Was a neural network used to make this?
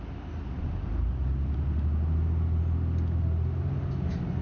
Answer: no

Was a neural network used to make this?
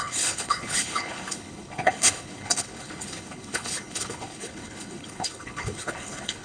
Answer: yes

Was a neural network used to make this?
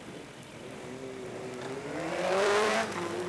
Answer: yes